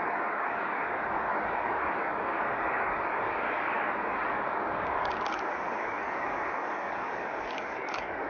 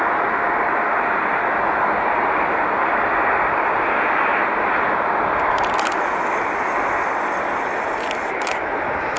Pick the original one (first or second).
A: second